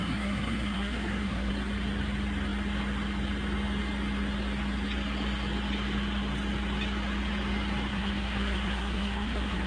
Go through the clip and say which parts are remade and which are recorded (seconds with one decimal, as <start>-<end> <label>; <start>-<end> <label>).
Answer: 0.0-1.5 remade; 1.5-7.9 recorded; 7.9-9.7 remade